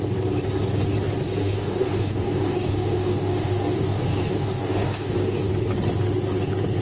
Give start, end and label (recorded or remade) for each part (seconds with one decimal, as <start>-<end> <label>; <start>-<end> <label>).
0.0-1.4 recorded; 1.4-5.5 remade; 5.5-6.8 recorded